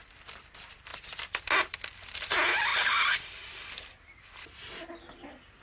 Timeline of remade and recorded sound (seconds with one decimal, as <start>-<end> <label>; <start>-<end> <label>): 0.0-2.7 recorded; 2.7-4.2 remade; 4.2-5.6 recorded